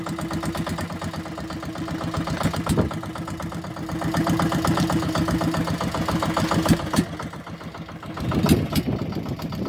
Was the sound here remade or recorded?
recorded